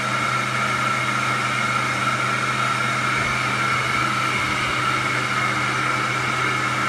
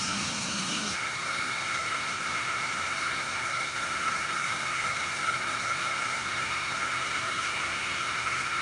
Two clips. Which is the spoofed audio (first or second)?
second